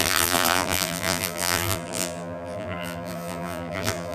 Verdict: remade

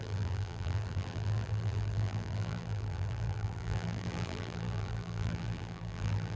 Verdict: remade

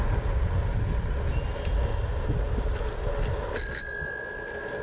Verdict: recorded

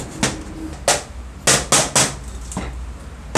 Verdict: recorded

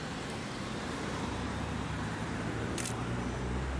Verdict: remade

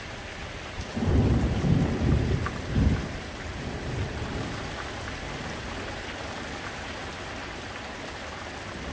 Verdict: recorded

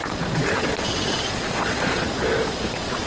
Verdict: remade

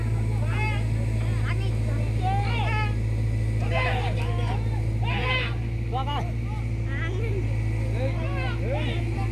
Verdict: recorded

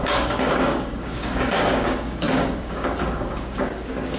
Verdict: remade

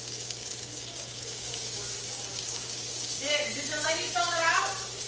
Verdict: remade